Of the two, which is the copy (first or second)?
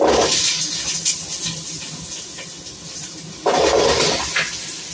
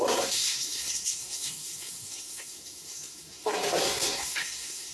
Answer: second